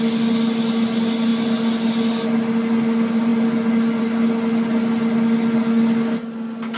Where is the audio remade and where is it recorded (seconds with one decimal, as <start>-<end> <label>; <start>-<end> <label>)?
0.0-6.8 recorded